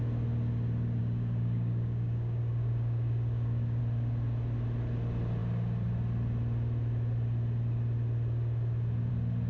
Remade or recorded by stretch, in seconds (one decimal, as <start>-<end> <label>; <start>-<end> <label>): 0.0-1.0 recorded; 1.0-3.8 remade; 3.8-9.5 recorded

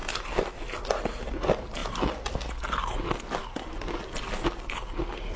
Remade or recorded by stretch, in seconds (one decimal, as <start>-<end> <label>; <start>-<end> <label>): 0.0-5.4 recorded

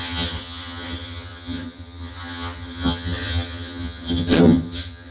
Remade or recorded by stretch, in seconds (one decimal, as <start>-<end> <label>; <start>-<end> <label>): 0.0-5.1 remade

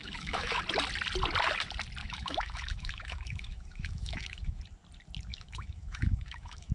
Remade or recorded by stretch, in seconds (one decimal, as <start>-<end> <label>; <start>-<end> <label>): 0.0-0.6 remade; 0.6-2.0 recorded; 2.0-4.6 remade; 4.6-5.3 recorded; 5.3-6.7 remade